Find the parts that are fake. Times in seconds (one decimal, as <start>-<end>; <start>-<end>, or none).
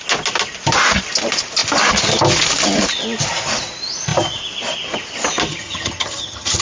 5.5-6.6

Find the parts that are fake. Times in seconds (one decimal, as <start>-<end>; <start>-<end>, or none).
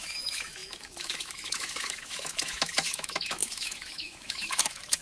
0.0-5.0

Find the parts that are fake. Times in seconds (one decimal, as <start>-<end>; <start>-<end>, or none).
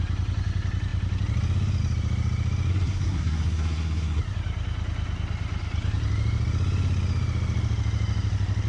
2.7-4.2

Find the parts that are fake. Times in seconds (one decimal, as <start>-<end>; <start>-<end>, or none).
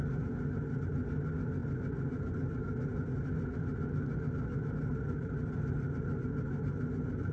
none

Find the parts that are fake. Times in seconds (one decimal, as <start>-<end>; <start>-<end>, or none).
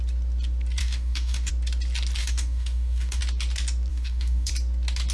0.8-1.5; 2.2-3.2; 3.9-4.5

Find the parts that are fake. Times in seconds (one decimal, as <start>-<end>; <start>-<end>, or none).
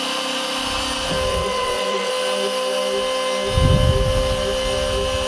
1.3-2.1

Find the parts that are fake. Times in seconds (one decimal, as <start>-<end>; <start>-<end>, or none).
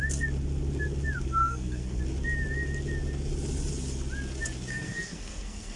1.4-2.0; 4.7-5.8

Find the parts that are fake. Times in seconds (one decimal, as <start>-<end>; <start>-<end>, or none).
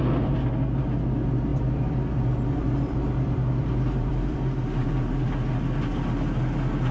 1.5-5.6